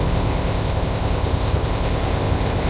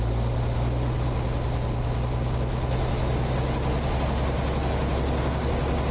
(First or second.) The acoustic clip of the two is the second